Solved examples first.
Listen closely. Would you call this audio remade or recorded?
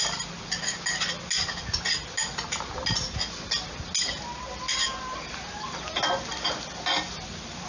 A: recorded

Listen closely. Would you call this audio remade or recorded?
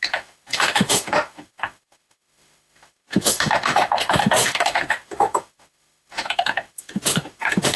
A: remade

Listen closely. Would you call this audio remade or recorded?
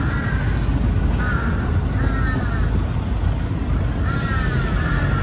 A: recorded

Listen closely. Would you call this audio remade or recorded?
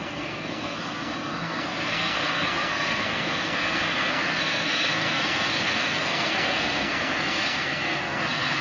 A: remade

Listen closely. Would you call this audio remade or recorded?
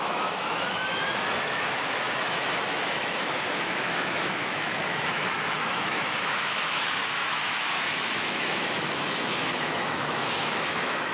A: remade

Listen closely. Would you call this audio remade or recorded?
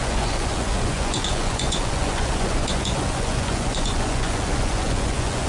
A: remade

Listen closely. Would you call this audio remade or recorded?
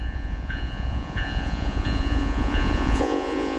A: remade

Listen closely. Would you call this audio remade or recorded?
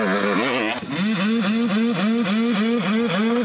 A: recorded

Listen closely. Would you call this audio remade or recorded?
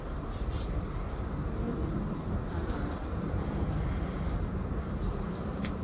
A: remade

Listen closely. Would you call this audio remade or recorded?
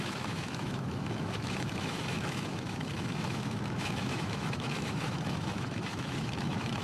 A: remade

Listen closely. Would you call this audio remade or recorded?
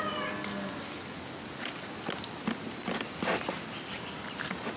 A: recorded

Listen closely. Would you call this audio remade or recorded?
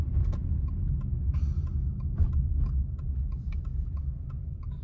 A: recorded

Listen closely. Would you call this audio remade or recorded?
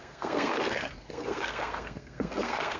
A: remade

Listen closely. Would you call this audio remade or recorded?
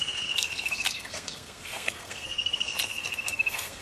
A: remade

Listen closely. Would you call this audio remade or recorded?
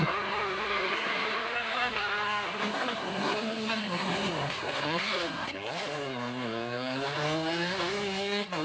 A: remade